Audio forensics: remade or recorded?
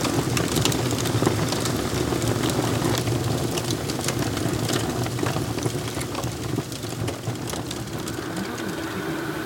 recorded